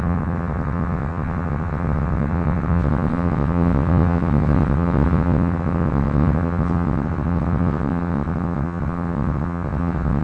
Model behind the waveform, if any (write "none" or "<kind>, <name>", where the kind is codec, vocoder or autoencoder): vocoder, WaveNeXt